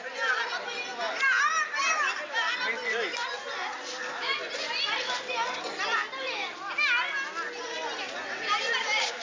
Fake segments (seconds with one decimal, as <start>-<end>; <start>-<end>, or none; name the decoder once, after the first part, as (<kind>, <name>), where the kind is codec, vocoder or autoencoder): none